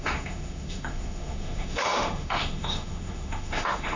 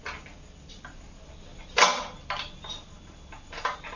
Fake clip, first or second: first